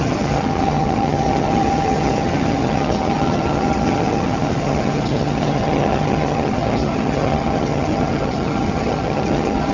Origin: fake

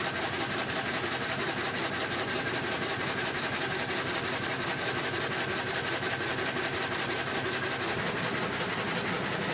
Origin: real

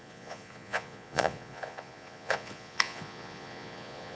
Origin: fake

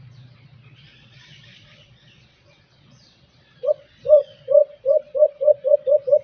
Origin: fake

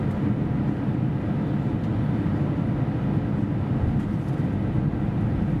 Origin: real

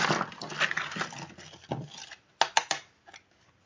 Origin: real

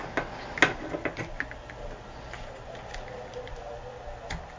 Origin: real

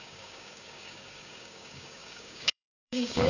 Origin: fake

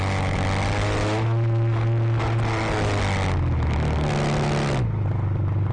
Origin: real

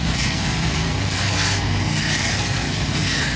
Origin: fake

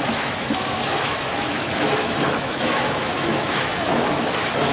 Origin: fake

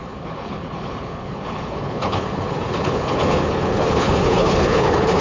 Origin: fake